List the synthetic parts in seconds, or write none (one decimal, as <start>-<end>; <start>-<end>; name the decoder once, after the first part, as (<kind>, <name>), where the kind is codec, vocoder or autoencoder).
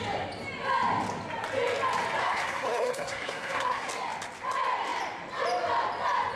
2.2-3.9 (codec, SNAC)